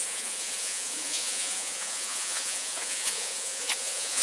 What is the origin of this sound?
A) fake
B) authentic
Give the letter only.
A